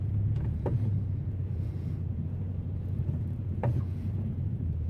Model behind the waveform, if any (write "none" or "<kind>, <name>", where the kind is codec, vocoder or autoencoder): vocoder, Vocos